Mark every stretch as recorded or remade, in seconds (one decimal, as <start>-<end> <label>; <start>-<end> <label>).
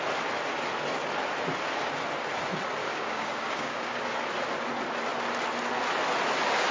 0.0-2.8 recorded; 2.8-4.0 remade; 4.0-6.7 recorded